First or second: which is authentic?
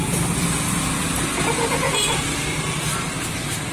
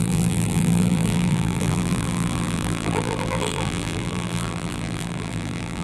first